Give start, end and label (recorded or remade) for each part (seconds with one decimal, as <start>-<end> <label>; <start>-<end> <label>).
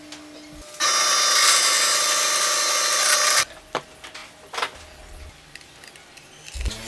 0.0-6.9 recorded